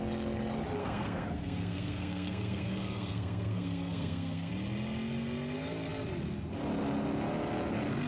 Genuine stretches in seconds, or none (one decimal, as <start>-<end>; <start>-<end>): 0.0-0.8; 4.5-8.1